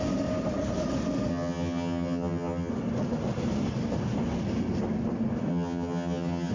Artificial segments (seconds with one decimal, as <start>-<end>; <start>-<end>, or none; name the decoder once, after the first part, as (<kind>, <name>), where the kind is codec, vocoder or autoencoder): 1.3-2.7 (vocoder, HiFi-GAN); 5.5-6.5